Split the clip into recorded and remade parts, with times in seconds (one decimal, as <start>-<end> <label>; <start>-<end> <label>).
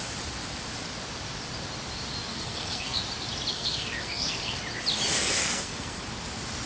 0.0-2.3 recorded; 2.3-3.0 remade; 3.0-3.5 recorded; 3.5-4.6 remade; 4.6-5.1 recorded; 5.1-6.0 remade; 6.0-6.7 recorded